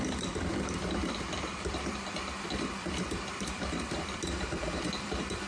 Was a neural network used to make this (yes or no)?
yes